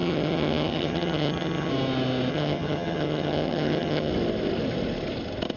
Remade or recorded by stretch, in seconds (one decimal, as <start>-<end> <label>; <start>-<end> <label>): 0.0-1.7 remade; 1.7-2.3 recorded; 2.3-4.1 remade; 4.1-5.6 recorded